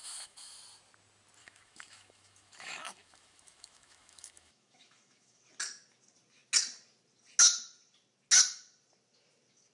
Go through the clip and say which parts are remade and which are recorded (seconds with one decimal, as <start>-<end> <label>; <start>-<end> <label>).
0.0-0.6 remade; 0.6-1.4 recorded; 1.4-5.4 remade; 5.4-9.7 recorded